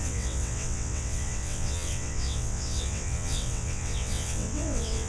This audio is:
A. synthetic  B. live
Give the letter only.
A